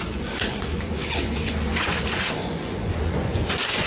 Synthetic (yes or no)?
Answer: yes